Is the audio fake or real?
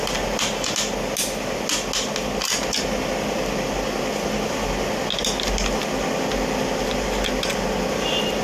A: real